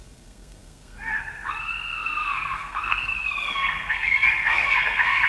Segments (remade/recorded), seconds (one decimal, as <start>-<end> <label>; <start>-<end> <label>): 0.0-5.3 remade